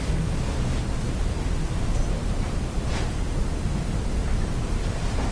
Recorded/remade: recorded